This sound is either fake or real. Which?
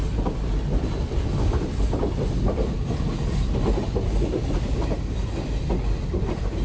real